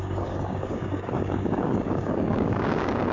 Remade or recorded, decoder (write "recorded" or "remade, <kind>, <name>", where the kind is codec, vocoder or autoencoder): remade, codec, DAC